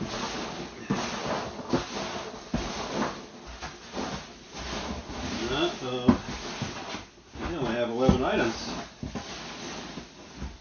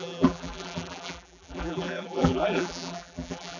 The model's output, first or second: second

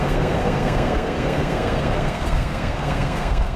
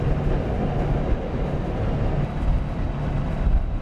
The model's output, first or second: first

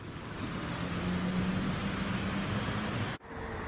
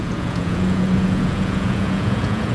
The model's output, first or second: second